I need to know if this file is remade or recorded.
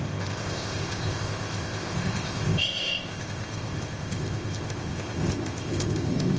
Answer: remade